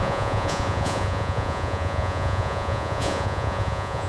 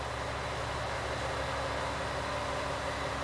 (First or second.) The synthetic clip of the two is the first